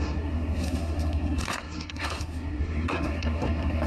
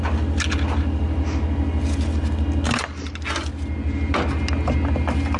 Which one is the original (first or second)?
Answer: second